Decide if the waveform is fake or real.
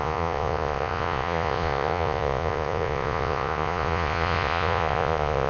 fake